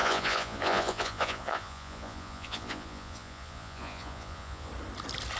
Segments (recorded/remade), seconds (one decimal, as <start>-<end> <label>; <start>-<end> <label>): 0.0-4.7 remade; 4.7-5.4 recorded